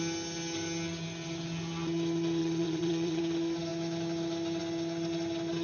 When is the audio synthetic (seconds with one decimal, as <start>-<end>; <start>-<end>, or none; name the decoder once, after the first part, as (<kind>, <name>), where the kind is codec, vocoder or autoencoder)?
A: 2.4-3.2 (vocoder, WaveNeXt)